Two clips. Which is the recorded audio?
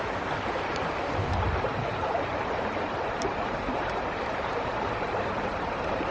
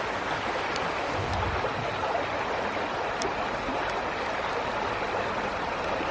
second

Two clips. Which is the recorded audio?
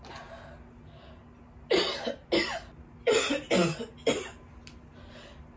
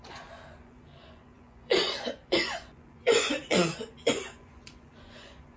first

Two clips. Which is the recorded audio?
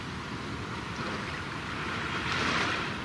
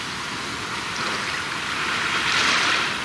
second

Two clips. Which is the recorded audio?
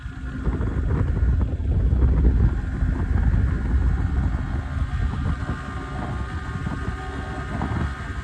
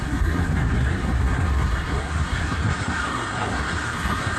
first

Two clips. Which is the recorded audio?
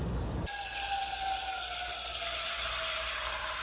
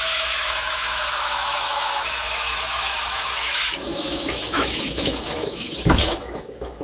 first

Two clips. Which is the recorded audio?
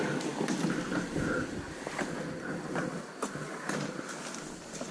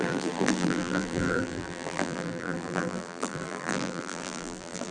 first